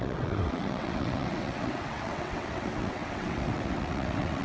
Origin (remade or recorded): remade